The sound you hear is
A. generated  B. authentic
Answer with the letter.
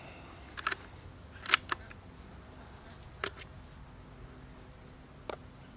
B